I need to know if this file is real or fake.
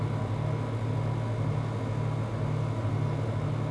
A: real